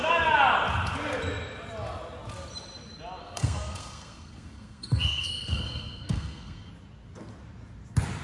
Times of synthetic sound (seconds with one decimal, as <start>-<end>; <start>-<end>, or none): 3.2-6.7